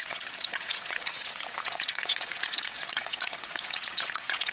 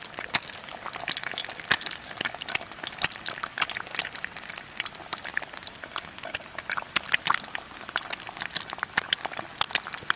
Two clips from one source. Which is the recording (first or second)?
second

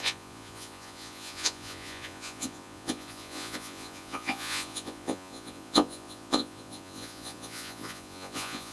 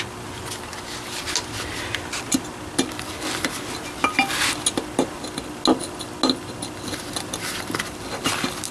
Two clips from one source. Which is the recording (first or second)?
second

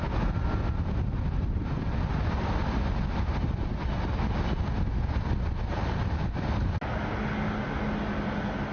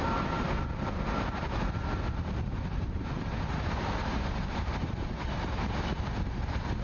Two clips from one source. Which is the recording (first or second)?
first